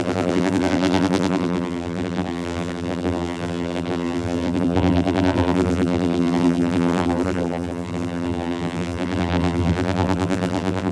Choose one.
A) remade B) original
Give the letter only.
A